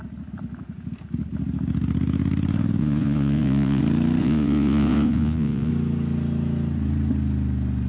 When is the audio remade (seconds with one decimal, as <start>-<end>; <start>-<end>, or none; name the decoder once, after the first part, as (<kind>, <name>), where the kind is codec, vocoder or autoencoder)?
2.8-3.8 (vocoder, Vocos); 4.2-5.7